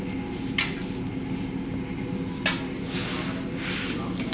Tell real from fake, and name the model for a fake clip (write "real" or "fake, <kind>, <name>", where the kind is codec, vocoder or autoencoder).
real